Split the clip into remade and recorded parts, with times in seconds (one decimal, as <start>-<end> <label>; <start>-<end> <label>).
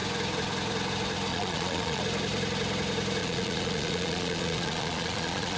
0.0-1.3 recorded; 1.3-2.0 remade; 2.0-3.2 recorded; 3.2-5.6 remade